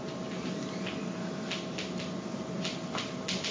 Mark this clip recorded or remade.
recorded